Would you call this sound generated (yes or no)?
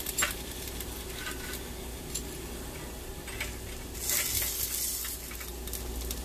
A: no